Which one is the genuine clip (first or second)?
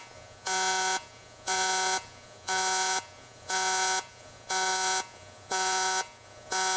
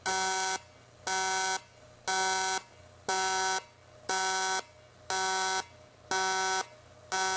second